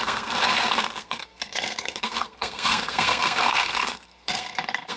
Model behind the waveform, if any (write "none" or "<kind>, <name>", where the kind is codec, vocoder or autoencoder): codec, SNAC